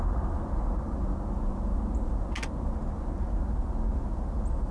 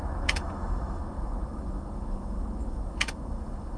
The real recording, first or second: first